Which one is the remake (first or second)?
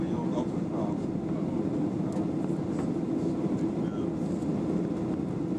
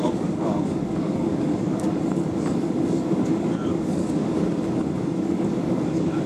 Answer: second